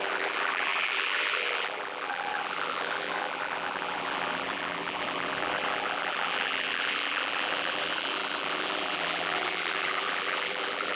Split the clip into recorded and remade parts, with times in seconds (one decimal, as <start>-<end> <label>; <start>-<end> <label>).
0.0-11.0 remade